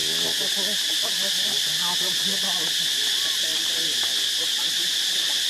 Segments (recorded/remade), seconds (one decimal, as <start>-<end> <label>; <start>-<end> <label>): 0.0-5.5 recorded

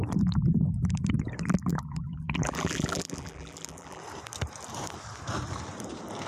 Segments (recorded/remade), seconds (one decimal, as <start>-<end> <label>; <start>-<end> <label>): 0.0-1.7 recorded; 1.7-4.0 remade; 4.0-6.3 recorded